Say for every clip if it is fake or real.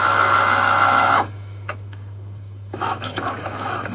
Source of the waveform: fake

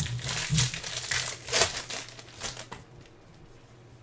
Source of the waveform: real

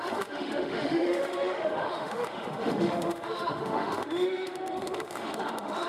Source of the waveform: fake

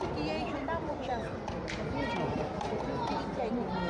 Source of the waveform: real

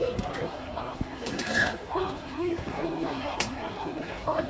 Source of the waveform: fake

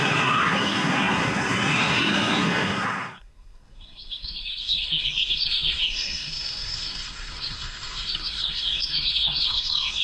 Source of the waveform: fake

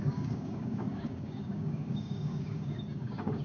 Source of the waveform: fake